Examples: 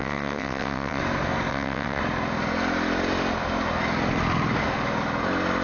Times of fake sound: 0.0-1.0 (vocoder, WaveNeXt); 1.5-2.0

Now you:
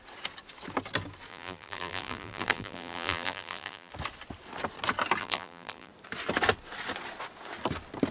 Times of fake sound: 1.3-3.9 (vocoder, BigVGAN v2); 5.2-5.9

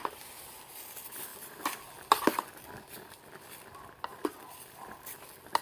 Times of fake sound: none

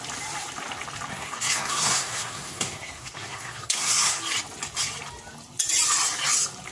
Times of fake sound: 1.1-4.2 (codec, SNAC)